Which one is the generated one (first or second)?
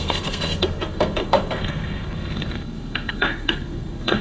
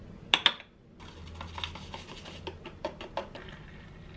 first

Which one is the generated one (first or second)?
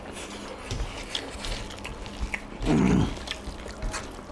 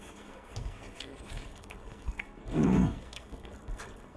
second